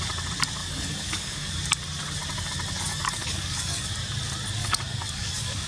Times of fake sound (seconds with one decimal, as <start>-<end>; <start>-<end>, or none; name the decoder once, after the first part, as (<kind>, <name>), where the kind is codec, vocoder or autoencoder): 0.6-1.5 (codec, DAC); 2.9-3.9; 4.6-5.7